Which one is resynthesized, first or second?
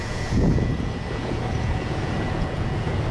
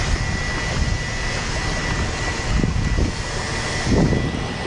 first